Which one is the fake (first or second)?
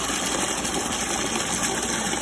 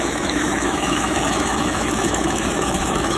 second